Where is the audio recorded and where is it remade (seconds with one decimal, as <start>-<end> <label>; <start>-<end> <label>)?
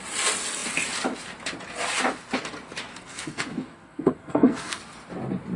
0.0-2.9 recorded; 2.9-4.8 remade; 4.8-5.6 recorded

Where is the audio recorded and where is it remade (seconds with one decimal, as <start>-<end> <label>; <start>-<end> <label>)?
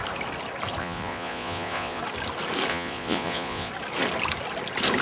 0.0-0.8 recorded; 0.8-2.0 remade; 2.0-2.7 recorded; 2.7-3.7 remade; 3.7-5.0 recorded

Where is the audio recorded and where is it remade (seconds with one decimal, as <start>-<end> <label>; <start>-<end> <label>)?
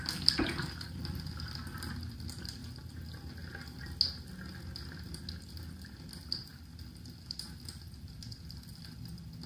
0.0-2.6 remade; 2.6-5.2 recorded; 5.2-9.5 remade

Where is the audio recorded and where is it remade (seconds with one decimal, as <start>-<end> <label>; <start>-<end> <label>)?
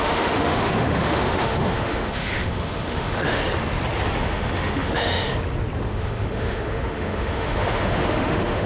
0.0-3.4 remade; 3.4-4.2 recorded; 4.2-5.3 remade; 5.3-5.9 recorded; 5.9-8.7 remade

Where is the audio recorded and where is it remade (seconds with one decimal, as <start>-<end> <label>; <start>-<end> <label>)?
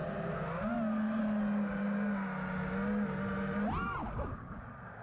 0.0-4.0 recorded; 4.0-4.6 remade; 4.6-5.0 recorded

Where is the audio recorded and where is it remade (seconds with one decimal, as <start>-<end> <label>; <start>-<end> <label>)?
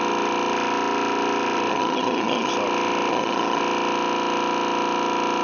0.0-1.7 recorded; 1.7-2.5 remade; 2.5-3.1 recorded; 3.1-3.6 remade; 3.6-5.4 recorded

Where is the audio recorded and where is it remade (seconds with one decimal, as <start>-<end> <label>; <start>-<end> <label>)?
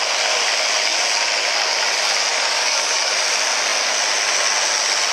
0.0-2.3 recorded; 2.3-3.1 remade; 3.1-5.1 recorded